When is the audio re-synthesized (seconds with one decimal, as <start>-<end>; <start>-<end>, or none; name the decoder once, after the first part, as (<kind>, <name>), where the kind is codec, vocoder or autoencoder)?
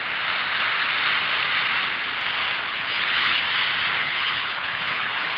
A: 2.7-3.4 (codec, HILCodec); 4.0-5.4